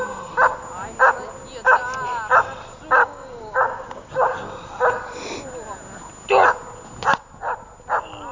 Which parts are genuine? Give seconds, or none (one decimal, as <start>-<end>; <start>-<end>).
0.0-3.0; 4.1-8.3